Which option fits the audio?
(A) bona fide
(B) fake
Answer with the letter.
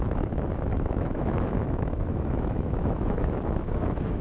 B